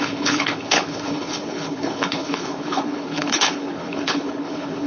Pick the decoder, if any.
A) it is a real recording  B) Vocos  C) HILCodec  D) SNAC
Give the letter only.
C